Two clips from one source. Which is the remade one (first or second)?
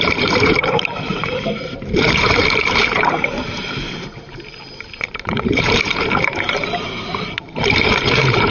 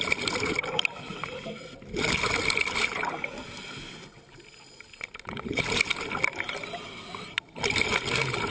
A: first